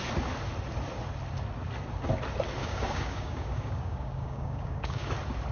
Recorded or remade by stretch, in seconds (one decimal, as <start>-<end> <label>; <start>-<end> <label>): 0.0-2.6 recorded; 2.6-5.1 remade; 5.1-5.5 recorded